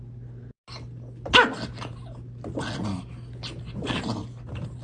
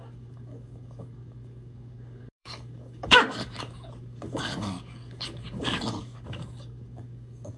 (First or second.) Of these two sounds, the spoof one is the second